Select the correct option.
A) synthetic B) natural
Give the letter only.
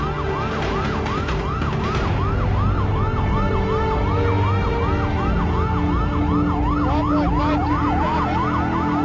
B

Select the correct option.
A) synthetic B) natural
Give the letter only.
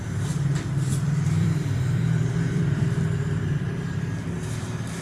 A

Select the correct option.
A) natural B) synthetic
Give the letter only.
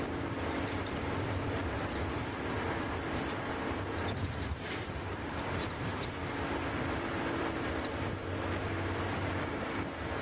B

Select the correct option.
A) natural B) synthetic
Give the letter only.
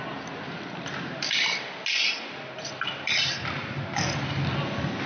A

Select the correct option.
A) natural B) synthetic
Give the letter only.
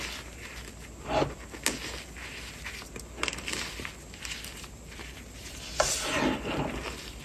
A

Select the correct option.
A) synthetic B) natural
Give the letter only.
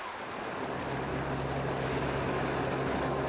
B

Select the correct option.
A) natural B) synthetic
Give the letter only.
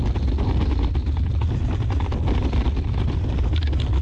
A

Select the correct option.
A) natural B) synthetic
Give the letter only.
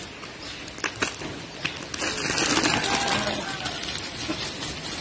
A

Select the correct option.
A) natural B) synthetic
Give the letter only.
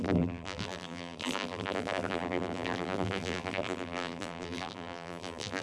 B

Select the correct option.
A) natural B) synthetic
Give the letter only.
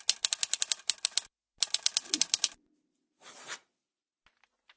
A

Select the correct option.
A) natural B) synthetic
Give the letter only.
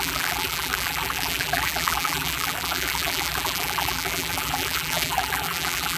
B